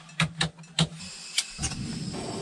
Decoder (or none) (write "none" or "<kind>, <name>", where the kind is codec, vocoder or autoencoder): none